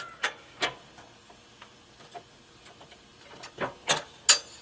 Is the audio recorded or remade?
recorded